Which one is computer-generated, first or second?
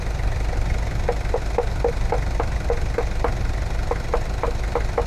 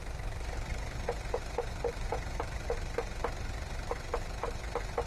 second